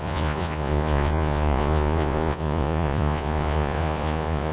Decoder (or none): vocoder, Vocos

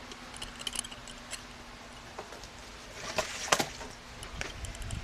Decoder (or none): none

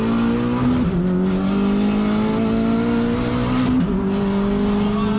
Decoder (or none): none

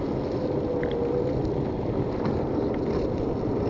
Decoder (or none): none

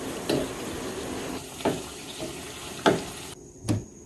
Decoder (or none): none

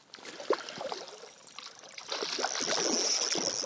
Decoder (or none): none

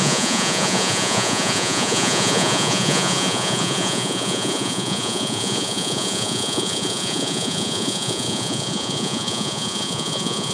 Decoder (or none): vocoder, Vocos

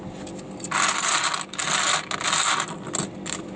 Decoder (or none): none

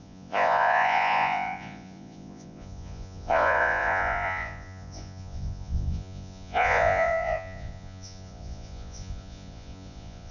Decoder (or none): vocoder, Vocos